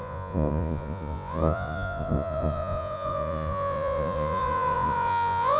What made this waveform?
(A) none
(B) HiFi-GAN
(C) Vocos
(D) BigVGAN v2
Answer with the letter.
C